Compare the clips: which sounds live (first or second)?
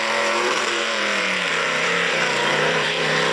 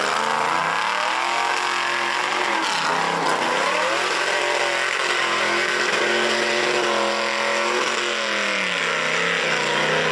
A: second